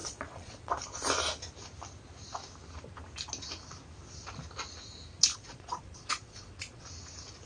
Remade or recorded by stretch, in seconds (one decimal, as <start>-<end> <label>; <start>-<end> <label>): 0.0-0.7 remade; 0.7-5.3 recorded; 5.3-6.8 remade; 6.8-7.5 recorded